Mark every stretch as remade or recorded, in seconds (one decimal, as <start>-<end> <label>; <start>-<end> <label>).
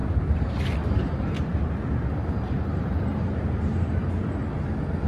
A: 0.0-1.5 recorded; 1.5-2.1 remade; 2.1-3.1 recorded; 3.1-3.7 remade; 3.7-5.1 recorded